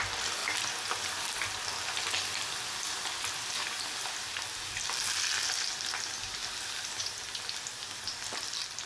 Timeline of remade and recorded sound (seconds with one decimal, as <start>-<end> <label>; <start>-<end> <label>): 0.0-8.9 recorded